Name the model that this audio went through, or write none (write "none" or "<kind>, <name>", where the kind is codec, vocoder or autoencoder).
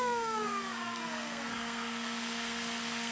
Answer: codec, SNAC